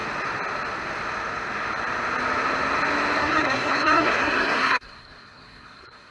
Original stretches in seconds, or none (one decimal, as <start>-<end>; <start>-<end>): 0.0-3.2